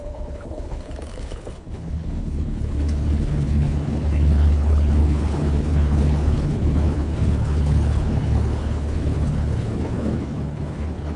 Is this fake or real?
fake